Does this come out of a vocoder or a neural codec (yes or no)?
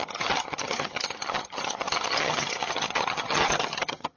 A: yes